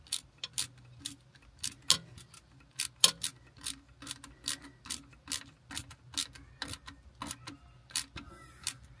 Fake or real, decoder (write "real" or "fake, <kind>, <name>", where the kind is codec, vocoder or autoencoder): real